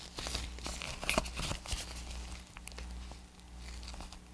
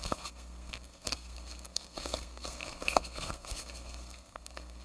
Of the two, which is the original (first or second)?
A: first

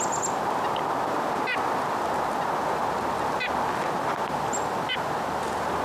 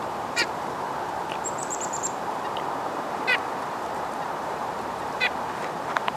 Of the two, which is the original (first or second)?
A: first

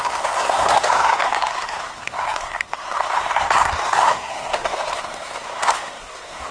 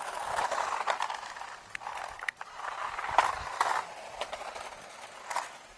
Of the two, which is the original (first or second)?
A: second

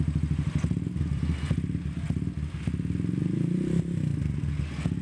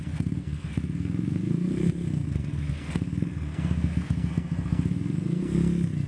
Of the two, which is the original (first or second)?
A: first